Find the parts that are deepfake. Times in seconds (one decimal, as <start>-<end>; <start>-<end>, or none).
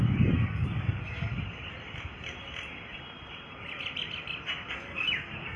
0.0-1.3; 4.7-5.6